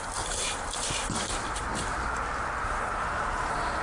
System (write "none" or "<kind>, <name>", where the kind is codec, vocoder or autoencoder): none